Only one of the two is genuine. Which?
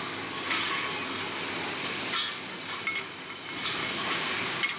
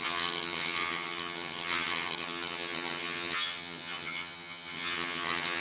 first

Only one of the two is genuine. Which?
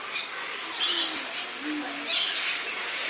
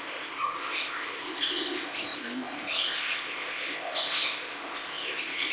first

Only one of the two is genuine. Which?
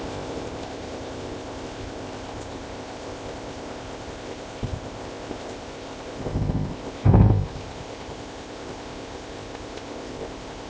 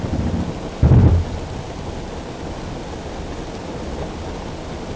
second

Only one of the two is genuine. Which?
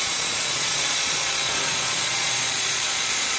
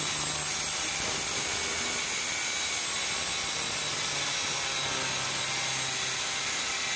second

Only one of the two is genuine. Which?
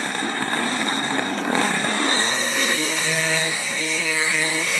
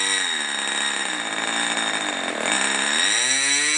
second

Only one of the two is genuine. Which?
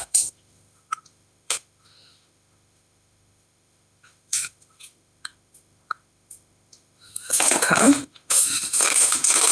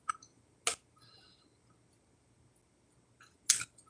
second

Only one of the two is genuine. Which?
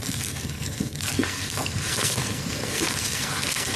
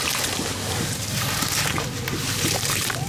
second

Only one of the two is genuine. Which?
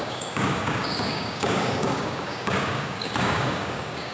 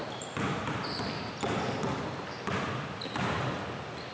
second